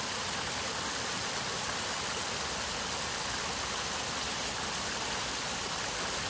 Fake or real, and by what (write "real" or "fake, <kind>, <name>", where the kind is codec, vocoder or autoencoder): real